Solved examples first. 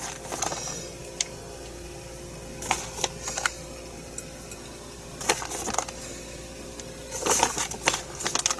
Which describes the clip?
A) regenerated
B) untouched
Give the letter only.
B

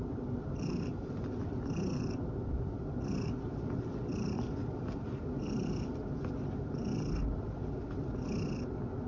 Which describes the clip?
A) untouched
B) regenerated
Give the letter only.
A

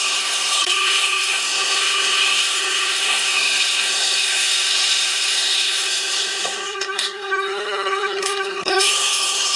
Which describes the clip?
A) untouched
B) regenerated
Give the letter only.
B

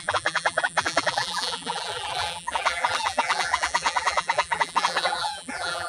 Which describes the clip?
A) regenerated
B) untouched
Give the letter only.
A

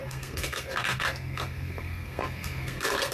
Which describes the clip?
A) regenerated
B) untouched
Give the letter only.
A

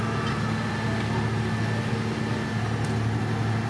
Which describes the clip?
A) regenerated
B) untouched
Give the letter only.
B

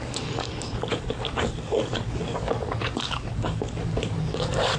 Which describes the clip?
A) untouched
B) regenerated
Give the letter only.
B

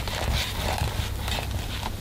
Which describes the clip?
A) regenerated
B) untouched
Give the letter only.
B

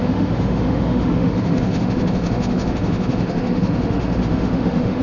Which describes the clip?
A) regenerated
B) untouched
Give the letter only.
A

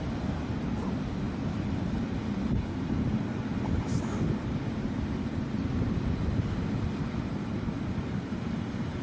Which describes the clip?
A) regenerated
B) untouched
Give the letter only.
A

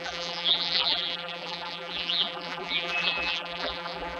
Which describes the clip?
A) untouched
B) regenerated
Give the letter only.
B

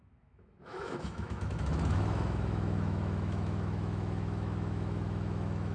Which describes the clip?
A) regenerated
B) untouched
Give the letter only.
A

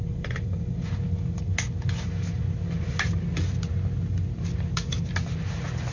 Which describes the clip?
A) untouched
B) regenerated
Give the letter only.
A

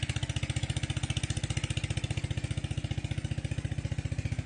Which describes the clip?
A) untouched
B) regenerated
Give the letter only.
A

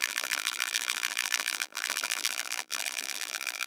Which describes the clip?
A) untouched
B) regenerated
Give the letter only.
B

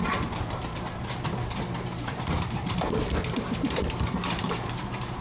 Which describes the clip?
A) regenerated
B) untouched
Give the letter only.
A